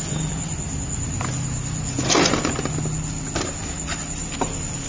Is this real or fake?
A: real